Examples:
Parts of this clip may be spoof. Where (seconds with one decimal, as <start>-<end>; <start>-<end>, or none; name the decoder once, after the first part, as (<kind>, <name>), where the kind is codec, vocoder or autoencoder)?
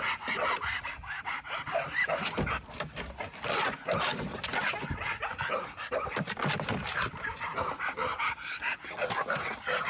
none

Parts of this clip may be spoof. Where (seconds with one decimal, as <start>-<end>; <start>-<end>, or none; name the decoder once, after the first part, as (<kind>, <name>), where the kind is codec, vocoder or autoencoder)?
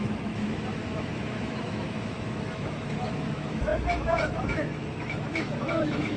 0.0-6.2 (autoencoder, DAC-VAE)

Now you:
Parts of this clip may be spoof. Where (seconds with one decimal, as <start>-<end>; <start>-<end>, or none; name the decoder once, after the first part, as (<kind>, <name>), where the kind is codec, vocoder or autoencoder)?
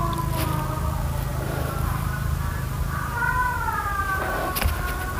1.3-3.9 (vocoder, BigVGAN v2)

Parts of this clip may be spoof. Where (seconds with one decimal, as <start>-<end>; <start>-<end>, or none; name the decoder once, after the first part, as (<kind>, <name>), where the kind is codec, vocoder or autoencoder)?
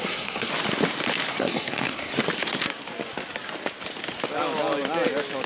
0.0-0.5 (codec, SNAC); 1.3-2.1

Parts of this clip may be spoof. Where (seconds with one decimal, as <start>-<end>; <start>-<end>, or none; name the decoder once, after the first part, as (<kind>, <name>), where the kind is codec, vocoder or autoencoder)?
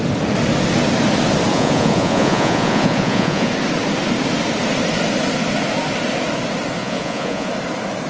1.5-3.5 (vocoder, Vocos); 6.8-7.5